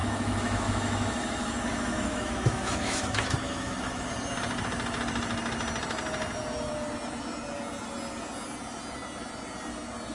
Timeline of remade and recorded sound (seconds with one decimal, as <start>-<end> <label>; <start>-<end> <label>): 0.0-4.1 remade; 4.1-10.1 recorded